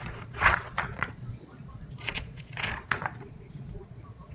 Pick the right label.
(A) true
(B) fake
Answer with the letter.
B